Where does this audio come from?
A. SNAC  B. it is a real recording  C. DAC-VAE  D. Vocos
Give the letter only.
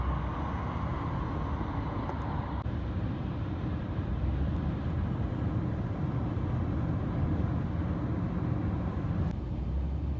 B